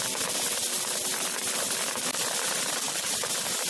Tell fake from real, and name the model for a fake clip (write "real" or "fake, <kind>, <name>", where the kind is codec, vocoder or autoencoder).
real